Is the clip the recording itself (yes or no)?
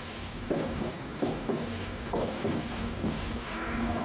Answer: no